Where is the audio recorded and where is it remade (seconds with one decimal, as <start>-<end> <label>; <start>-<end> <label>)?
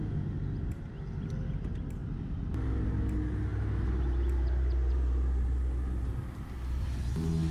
0.0-7.5 recorded